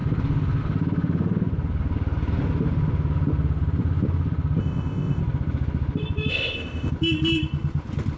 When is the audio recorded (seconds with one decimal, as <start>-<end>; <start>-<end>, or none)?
0.0-4.6; 5.2-6.3; 6.9-8.2

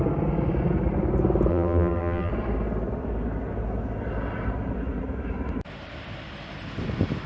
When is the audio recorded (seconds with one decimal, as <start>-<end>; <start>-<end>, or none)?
0.0-1.5; 2.3-7.3

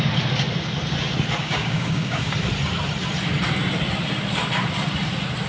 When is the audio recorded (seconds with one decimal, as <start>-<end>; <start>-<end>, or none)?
0.0-1.4; 2.3-5.5